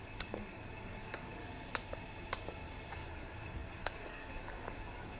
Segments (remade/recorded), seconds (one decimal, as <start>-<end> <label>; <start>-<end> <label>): 0.0-1.4 remade; 1.4-2.9 recorded; 2.9-5.2 remade